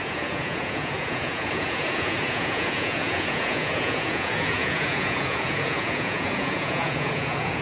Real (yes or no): no